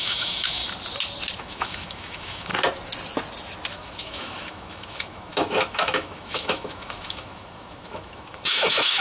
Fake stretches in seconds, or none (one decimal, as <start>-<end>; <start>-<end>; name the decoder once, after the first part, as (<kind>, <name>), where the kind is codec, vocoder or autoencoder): 0.0-0.6 (autoencoder, DAC-VAE); 1.4-2.5; 3.7-9.0